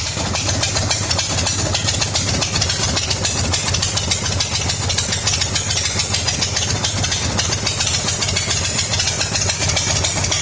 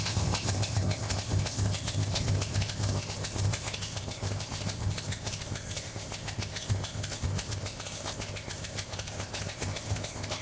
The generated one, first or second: second